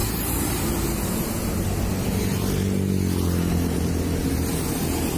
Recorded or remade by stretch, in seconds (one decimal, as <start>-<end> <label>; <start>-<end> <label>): 0.0-0.7 remade; 0.7-5.2 recorded